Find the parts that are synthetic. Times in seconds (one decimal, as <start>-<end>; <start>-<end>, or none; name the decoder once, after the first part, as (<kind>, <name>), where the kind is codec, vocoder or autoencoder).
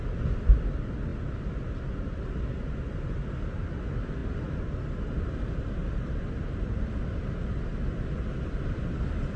none